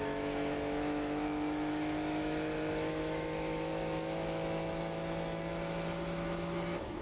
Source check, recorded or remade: remade